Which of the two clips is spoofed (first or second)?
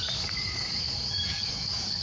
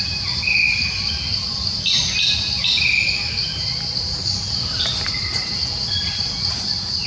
first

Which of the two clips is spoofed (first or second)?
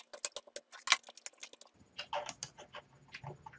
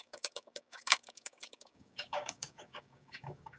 second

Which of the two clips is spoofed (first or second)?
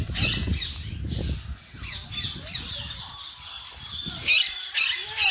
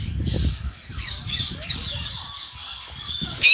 second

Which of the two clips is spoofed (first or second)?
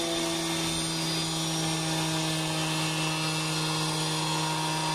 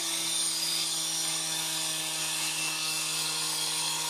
second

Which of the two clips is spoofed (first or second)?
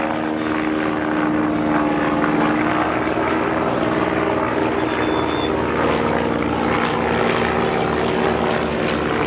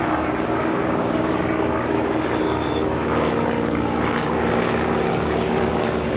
second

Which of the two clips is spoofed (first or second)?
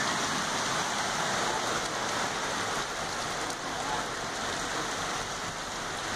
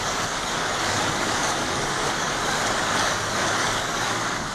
second